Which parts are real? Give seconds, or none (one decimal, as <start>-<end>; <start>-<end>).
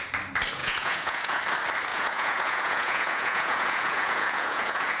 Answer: 0.0-0.6; 1.4-1.9